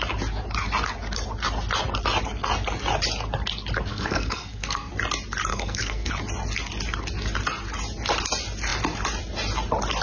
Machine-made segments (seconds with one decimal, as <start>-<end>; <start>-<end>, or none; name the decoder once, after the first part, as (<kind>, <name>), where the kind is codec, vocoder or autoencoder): 3.9-4.9 (codec, SNAC); 5.5-6.1